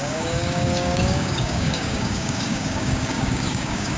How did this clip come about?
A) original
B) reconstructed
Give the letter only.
B